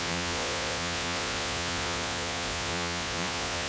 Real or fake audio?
fake